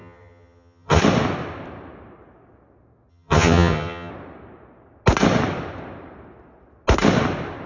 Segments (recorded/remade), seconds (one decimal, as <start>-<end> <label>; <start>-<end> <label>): 0.0-1.0 remade; 1.0-3.1 recorded; 3.1-4.1 remade; 4.1-7.7 recorded